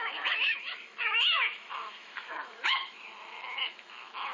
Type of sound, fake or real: fake